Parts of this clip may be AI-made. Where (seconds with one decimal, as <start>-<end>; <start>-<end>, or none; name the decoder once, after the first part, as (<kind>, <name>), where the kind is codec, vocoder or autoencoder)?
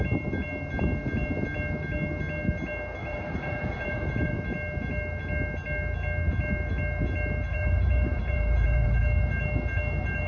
3.0-4.4 (vocoder, Vocos); 7.5-9.0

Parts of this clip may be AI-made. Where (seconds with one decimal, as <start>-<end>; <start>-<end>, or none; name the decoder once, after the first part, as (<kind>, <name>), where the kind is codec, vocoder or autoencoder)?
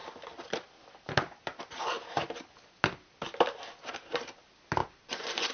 4.8-5.5 (vocoder, Vocos)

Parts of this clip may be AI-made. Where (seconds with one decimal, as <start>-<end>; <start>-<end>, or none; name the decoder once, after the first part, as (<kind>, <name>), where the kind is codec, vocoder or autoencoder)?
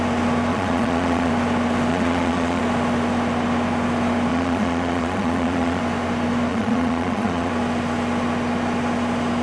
0.5-1.3 (vocoder, Vocos); 1.9-2.6; 4.3-5.8; 6.5-7.5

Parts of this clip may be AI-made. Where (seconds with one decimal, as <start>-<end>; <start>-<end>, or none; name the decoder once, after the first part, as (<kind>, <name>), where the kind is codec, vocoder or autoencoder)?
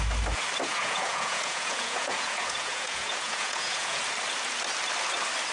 0.7-4.0 (vocoder, Vocos)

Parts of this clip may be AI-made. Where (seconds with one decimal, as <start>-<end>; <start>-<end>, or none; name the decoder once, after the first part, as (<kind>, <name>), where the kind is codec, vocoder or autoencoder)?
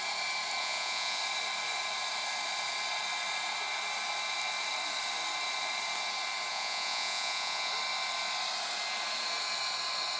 0.6-1.2 (vocoder, Vocos); 6.5-7.7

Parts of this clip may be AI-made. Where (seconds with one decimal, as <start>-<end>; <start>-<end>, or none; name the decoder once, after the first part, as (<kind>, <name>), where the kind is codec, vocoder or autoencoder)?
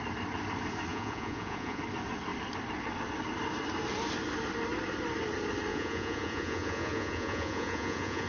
0.9-1.8 (vocoder, Vocos); 5.7-8.3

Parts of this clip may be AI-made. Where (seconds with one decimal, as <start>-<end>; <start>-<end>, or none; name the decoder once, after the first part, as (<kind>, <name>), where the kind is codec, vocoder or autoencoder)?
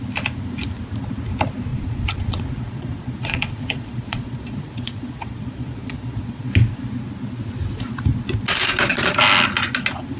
1.7-6.5 (vocoder, Vocos)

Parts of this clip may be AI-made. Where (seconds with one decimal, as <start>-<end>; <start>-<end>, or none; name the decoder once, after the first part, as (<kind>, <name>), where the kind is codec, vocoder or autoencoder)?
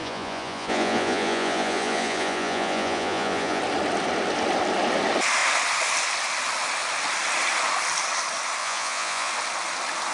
0.0-3.6 (vocoder, Vocos); 8.6-9.3